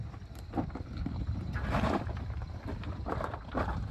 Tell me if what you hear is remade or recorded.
remade